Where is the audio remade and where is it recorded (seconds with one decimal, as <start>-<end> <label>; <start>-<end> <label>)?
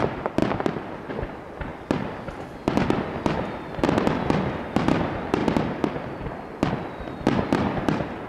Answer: 0.0-8.3 recorded